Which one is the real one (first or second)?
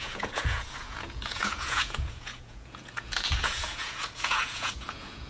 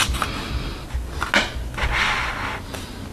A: second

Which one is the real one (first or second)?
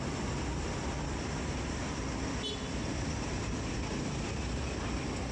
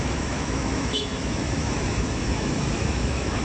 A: first